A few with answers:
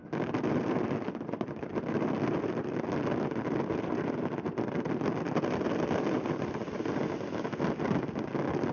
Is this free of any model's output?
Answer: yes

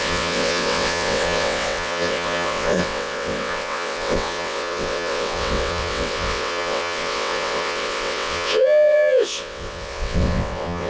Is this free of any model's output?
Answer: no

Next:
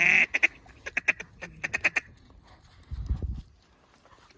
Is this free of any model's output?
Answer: yes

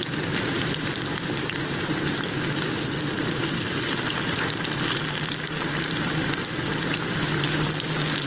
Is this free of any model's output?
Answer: yes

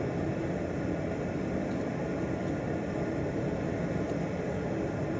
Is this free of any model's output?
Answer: yes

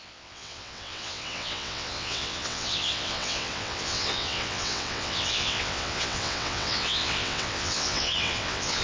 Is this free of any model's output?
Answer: no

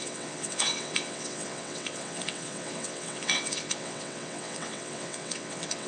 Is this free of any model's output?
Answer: no